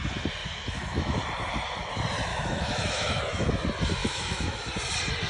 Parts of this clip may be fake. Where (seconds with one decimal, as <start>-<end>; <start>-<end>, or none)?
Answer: 0.4-1.2; 2.3-3.5; 4.0-4.7